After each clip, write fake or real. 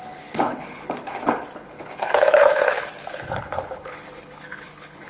fake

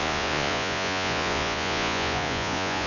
fake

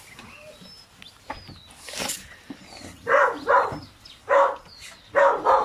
fake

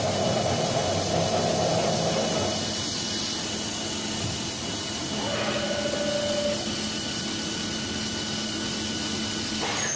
real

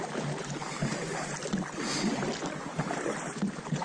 real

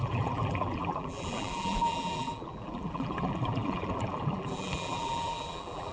fake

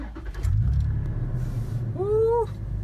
real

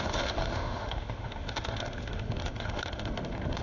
fake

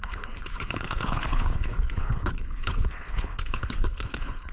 fake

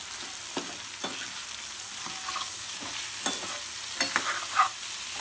real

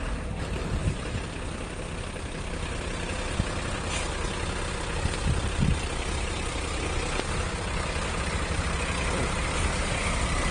real